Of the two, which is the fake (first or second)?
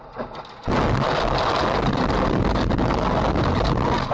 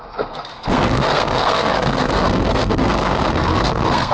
second